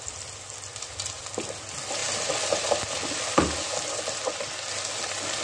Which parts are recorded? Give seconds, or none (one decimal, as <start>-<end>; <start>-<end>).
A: 0.0-5.4